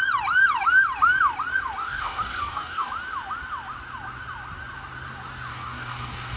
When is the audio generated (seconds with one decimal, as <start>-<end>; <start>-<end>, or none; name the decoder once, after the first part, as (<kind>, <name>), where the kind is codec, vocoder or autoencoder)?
1.8-2.9 (codec, DAC); 5.5-6.4